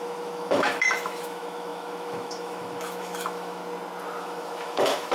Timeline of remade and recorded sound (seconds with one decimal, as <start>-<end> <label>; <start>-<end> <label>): 0.0-3.6 remade; 3.6-4.2 recorded; 4.2-5.1 remade